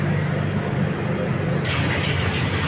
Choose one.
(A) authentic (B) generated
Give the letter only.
A